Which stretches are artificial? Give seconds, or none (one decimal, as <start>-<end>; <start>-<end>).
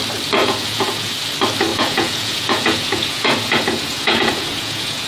0.4-1.1; 1.7-5.1